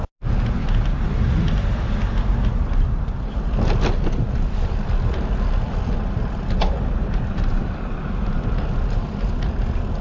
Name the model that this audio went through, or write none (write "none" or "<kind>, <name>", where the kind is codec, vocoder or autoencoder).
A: none